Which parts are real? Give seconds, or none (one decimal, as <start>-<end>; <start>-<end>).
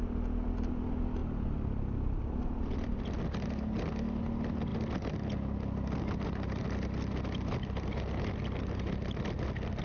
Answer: 0.0-9.8